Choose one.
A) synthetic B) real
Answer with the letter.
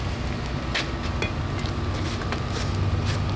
B